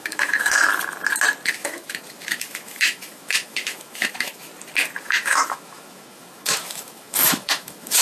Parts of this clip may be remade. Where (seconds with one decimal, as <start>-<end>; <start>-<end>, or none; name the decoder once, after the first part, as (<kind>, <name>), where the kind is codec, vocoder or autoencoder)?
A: 0.0-0.7 (autoencoder, DAC-VAE); 1.5-4.5; 5.0-8.0